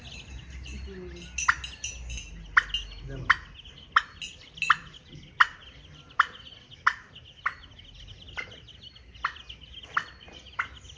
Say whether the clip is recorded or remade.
recorded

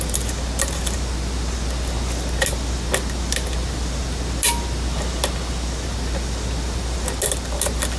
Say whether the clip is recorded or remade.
recorded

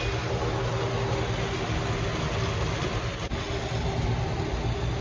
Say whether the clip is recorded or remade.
recorded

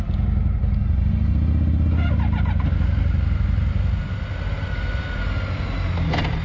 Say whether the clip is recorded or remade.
recorded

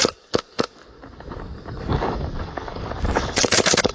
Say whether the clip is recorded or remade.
remade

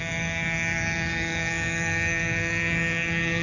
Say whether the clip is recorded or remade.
remade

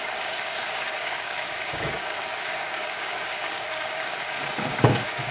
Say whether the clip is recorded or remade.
remade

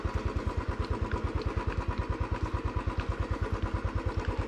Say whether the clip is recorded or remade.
recorded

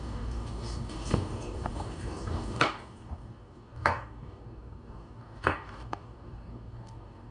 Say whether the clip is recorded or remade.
remade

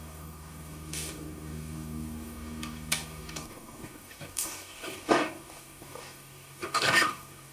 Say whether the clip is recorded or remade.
remade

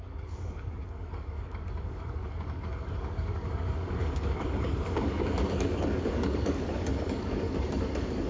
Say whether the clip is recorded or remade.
remade